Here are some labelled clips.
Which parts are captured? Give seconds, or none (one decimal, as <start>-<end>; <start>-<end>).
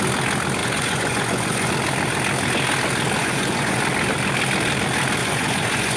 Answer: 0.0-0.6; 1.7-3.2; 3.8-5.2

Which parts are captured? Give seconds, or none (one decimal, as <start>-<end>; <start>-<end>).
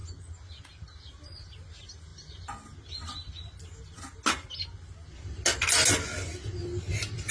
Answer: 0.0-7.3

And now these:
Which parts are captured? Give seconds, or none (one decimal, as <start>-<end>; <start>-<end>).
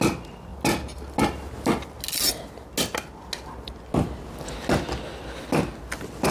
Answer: 0.0-6.3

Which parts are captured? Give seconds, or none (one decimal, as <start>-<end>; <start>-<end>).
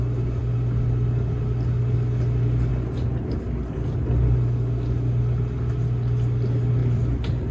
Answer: 0.0-6.8